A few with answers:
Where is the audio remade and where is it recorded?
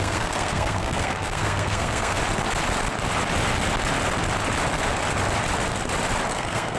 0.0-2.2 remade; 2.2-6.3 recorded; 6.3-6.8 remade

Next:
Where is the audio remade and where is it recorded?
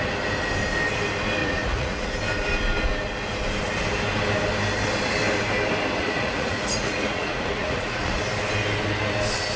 0.0-1.4 recorded; 1.4-2.1 remade; 2.1-6.0 recorded; 6.0-8.2 remade; 8.2-9.6 recorded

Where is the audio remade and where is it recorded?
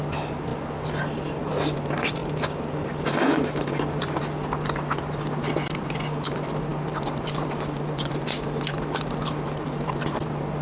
0.0-10.6 recorded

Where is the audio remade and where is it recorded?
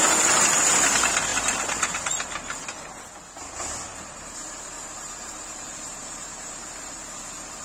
0.0-3.9 recorded; 3.9-7.6 remade